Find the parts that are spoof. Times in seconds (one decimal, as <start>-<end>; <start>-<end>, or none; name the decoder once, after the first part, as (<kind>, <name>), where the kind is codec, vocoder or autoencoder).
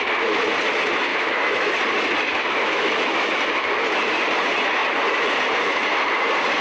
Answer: 1.1-1.7 (autoencoder, DAC-VAE); 2.3-3.3